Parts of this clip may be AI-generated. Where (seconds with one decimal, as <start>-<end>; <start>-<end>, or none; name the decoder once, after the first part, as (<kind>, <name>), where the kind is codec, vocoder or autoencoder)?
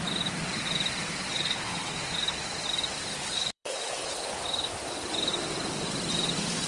1.3-2.0 (codec, HILCodec); 3.1-4.4